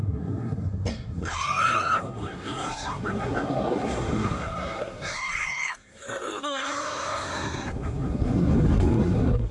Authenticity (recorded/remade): remade